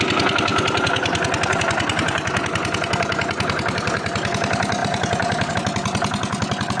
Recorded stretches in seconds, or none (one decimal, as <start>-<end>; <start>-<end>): 0.0-6.8